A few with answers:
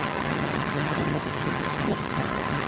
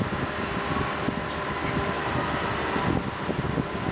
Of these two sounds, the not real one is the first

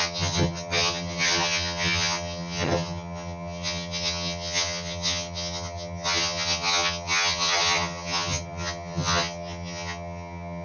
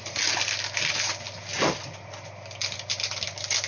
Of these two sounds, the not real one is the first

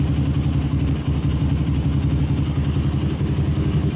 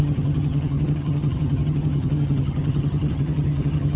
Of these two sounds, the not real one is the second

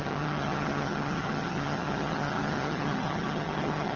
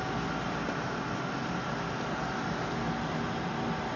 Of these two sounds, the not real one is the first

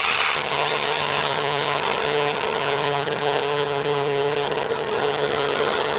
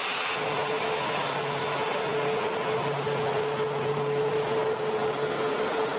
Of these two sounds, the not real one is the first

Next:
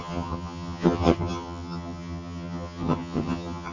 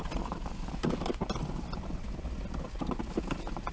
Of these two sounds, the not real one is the first